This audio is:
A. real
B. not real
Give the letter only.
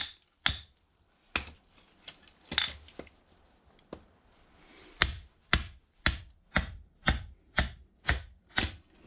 A